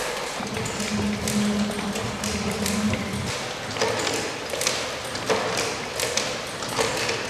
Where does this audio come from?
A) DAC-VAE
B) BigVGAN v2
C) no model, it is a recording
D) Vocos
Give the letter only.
C